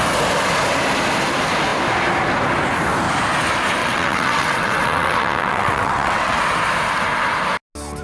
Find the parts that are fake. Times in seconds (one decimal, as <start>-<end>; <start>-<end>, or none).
3.8-6.4